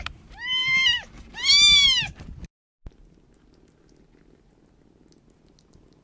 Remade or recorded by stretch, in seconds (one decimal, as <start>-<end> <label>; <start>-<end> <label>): 0.0-6.0 recorded